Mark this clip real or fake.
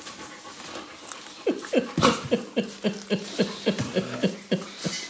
real